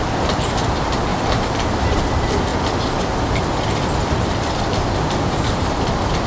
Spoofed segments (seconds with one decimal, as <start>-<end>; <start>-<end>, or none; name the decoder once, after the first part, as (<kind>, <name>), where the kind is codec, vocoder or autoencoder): 1.1-1.7 (vocoder, BigVGAN v2)